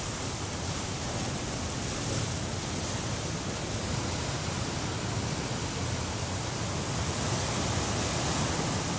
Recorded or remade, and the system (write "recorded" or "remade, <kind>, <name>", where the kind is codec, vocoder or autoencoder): recorded